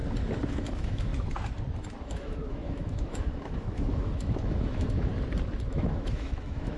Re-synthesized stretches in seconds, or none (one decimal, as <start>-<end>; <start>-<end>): 0.5-1.1; 2.0-5.1; 5.7-6.8